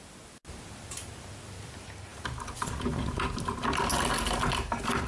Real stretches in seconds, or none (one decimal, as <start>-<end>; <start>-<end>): 0.0-5.1